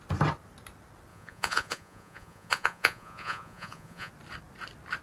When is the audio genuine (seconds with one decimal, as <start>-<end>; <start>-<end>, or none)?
0.0-1.1; 4.1-5.0